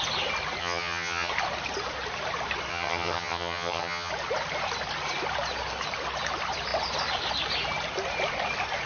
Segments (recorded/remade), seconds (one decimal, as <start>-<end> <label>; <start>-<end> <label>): 0.0-0.6 recorded; 0.6-1.3 remade; 1.3-2.7 recorded; 2.7-4.1 remade; 4.1-8.9 recorded